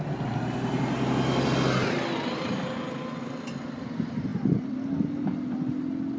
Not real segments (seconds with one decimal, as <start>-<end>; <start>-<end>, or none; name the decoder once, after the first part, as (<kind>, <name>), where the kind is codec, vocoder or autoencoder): none